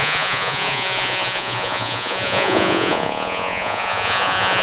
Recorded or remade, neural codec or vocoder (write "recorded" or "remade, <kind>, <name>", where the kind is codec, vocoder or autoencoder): remade, vocoder, Vocos